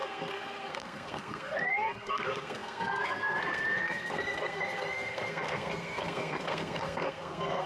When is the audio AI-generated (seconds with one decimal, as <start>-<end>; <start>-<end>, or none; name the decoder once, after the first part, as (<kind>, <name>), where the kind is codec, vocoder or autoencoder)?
0.0-7.7 (codec, SNAC)